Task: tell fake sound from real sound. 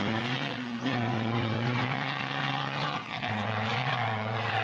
fake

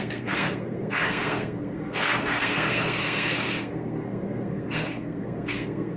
fake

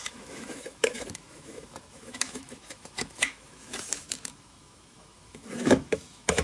fake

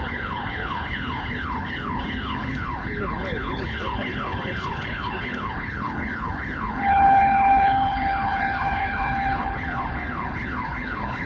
fake